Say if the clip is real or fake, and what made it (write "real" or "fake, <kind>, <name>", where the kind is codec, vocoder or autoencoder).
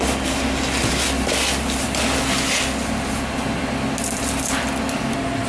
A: real